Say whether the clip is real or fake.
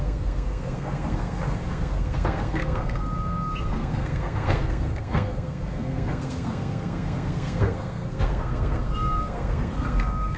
fake